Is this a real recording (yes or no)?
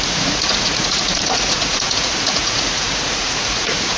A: no